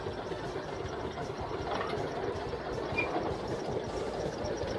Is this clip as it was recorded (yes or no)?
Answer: yes